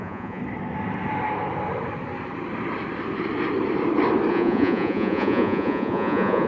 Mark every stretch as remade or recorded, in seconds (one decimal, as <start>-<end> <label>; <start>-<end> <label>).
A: 0.0-0.4 remade; 0.4-4.3 recorded; 4.3-6.5 remade